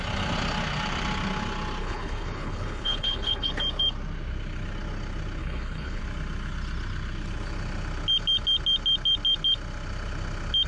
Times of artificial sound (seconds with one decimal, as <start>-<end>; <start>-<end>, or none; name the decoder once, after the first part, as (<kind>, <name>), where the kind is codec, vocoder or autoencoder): 1.8-3.5 (codec, HILCodec); 5.4-6.0